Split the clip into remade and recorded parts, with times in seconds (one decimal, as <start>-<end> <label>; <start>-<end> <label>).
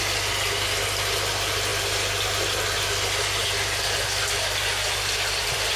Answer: 0.0-5.8 recorded